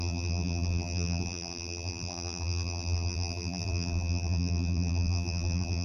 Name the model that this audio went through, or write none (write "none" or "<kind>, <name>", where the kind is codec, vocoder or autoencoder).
vocoder, BigVGAN v2